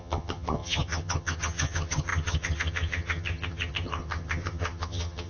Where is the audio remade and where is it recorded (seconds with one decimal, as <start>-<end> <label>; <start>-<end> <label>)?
0.0-5.3 remade